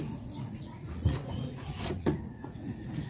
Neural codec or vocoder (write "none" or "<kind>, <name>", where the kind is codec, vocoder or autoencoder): vocoder, Vocos